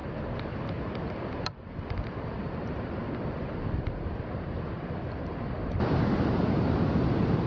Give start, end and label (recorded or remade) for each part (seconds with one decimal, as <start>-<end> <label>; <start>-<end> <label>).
0.0-7.5 remade